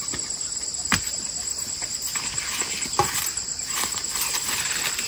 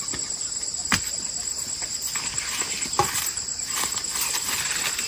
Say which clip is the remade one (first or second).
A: first